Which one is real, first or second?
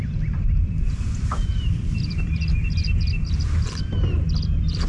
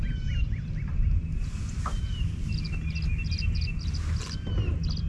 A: second